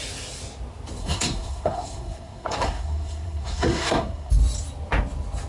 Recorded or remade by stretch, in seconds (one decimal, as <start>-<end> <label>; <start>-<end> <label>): 0.0-1.0 recorded; 1.0-4.3 remade; 4.3-5.5 recorded